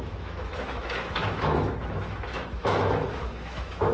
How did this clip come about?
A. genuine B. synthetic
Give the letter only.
B